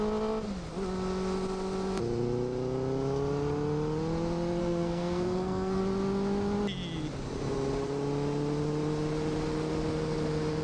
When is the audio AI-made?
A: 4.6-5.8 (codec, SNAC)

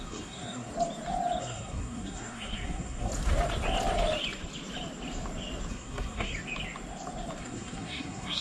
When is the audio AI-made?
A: 0.0-0.7 (codec, SNAC); 1.4-3.1; 5.7-6.3; 7.4-8.4

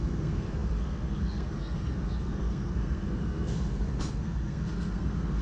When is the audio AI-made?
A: 0.0-5.4 (codec, SNAC)

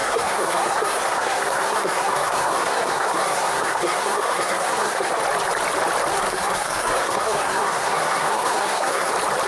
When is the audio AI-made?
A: 0.0-5.2 (codec, SNAC); 6.1-9.1

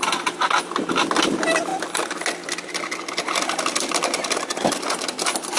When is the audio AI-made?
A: none

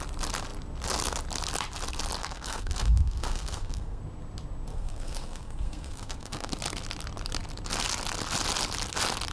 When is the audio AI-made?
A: 2.2-4.0 (codec, SNAC); 4.7-6.5